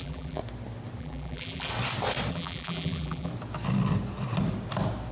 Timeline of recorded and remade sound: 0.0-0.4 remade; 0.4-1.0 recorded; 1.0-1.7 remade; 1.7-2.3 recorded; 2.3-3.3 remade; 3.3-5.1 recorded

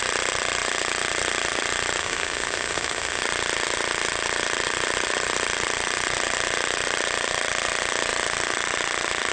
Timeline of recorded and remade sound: 0.0-2.0 recorded; 2.0-3.2 remade; 3.2-9.3 recorded